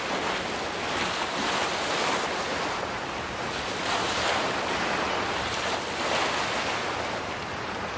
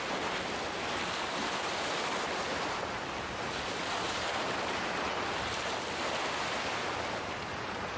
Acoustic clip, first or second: first